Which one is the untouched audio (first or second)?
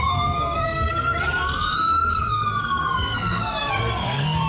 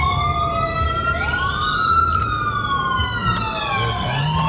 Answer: second